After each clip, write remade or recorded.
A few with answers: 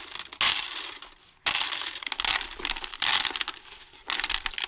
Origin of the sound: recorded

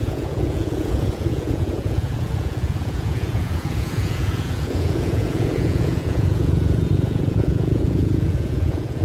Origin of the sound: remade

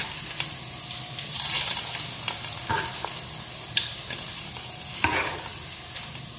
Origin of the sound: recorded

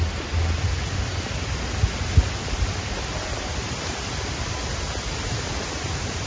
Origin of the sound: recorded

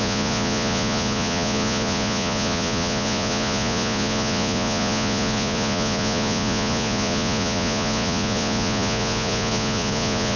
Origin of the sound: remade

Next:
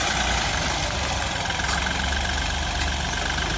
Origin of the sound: recorded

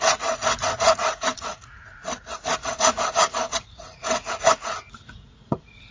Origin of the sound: remade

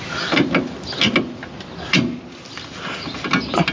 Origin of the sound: recorded